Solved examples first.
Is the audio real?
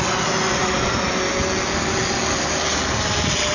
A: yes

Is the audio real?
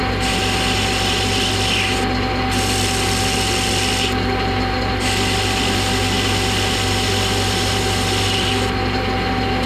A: yes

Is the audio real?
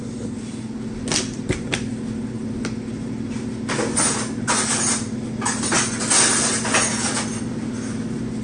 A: yes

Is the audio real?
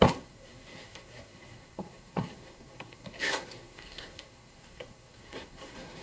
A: no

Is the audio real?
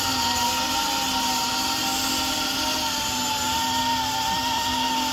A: yes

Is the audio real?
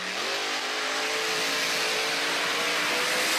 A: yes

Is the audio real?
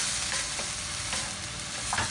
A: yes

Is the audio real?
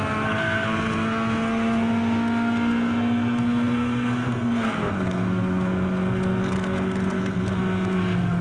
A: no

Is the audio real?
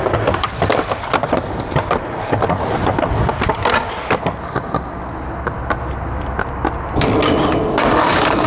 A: yes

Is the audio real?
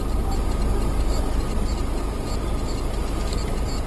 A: yes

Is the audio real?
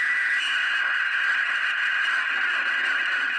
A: yes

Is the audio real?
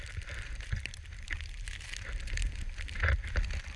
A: yes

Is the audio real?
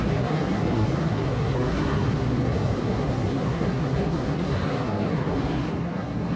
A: no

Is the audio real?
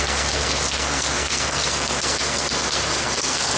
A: no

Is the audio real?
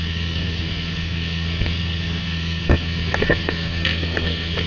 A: no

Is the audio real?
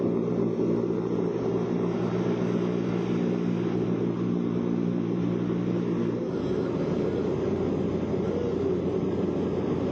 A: yes